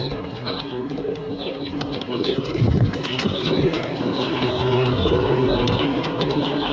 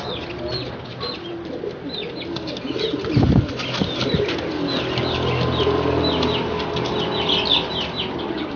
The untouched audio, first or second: second